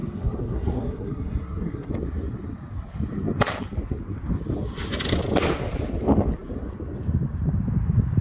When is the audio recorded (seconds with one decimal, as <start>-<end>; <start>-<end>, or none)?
1.9-8.2